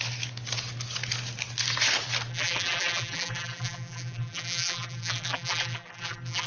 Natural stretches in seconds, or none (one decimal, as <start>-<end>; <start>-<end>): 0.0-2.3